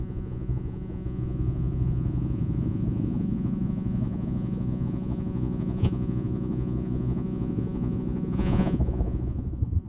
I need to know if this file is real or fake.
fake